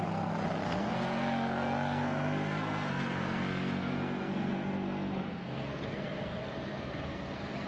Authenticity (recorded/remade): remade